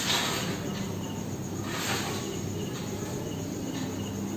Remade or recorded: recorded